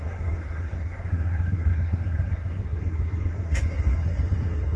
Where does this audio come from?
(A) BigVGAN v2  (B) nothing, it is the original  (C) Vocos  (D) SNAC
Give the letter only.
D